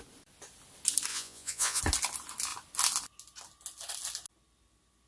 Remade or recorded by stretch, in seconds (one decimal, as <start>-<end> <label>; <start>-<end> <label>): 0.0-1.1 recorded; 1.1-1.8 remade; 1.8-5.1 recorded